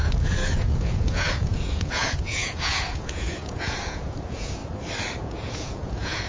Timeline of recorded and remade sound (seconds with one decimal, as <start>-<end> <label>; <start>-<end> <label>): 0.0-4.6 remade; 4.6-5.2 recorded; 5.2-6.3 remade